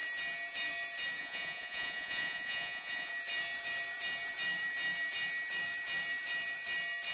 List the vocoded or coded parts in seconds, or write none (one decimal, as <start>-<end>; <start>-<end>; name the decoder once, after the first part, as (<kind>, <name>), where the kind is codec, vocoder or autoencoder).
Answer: 1.2-3.1 (vocoder, Vocos)